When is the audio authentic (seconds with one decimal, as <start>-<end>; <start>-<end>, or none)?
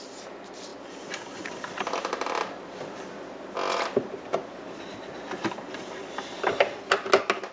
0.0-7.5